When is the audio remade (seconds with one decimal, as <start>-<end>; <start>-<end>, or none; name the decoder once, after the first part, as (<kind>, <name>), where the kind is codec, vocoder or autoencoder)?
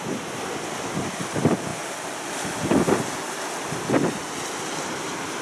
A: none